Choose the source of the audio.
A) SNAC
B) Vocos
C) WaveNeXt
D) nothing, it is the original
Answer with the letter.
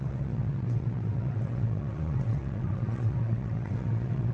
C